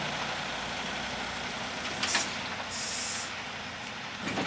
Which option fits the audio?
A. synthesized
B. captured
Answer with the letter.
B